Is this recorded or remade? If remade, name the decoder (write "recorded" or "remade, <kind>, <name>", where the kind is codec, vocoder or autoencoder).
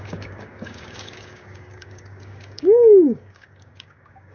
remade, codec, DAC